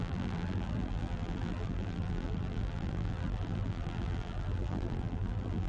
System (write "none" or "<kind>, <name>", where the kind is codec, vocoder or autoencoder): vocoder, BigVGAN v2